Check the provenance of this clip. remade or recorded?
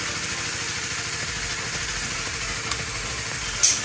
recorded